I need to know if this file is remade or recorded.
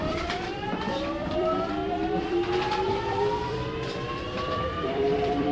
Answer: remade